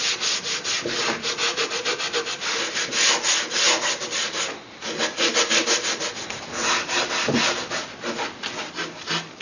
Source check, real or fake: real